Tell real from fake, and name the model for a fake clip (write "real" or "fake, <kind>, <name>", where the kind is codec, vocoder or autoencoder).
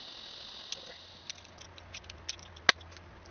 real